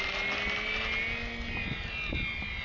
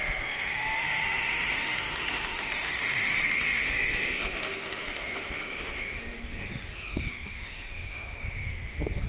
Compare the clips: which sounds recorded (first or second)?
first